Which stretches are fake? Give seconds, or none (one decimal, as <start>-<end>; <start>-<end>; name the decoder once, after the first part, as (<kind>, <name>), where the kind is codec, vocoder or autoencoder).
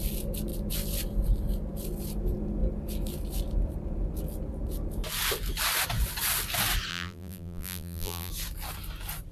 6.9-8.3 (vocoder, BigVGAN v2)